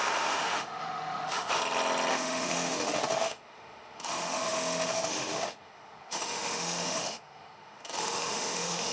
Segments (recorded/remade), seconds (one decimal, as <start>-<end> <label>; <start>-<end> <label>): 0.0-1.6 remade; 1.6-2.1 recorded; 2.1-8.9 remade